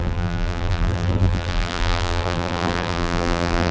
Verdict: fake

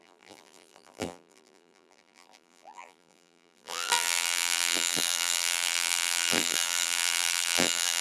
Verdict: fake